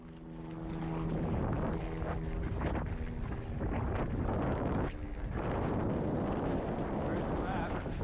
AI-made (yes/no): no